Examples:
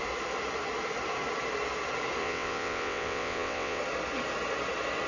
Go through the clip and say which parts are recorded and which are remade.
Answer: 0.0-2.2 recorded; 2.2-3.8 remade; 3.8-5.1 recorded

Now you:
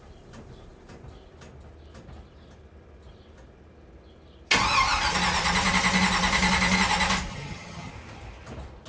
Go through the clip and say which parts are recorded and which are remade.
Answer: 0.0-7.3 recorded; 7.3-7.9 remade; 7.9-8.9 recorded

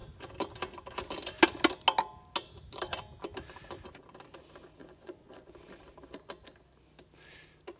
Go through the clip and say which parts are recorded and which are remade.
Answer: 0.0-4.8 recorded; 4.8-5.5 remade; 5.5-7.8 recorded

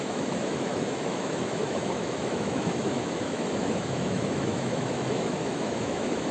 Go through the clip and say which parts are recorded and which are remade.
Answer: 0.0-6.3 remade

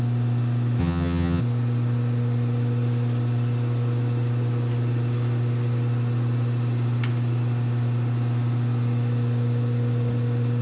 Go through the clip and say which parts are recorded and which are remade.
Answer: 0.0-0.8 recorded; 0.8-1.4 remade; 1.4-10.6 recorded

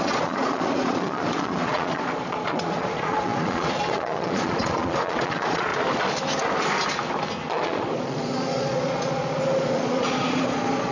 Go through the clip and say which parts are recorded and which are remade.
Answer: 0.0-5.7 remade; 5.7-7.5 recorded; 7.5-10.9 remade

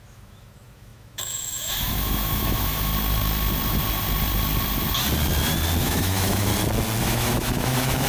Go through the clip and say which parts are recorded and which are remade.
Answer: 0.0-2.9 remade; 2.9-5.8 recorded; 5.8-6.5 remade; 6.5-7.0 recorded; 7.0-8.1 remade

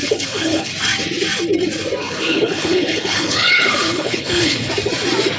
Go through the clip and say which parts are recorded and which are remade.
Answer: 0.0-0.7 remade; 0.7-2.0 recorded; 2.0-4.7 remade; 4.7-5.4 recorded